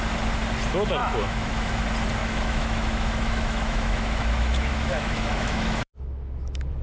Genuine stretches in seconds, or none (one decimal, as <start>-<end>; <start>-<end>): 0.0-1.0; 1.7-2.2; 5.9-6.8